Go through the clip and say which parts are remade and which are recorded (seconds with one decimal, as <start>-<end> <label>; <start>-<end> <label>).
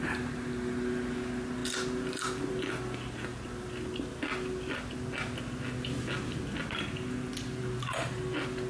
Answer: 0.0-8.7 recorded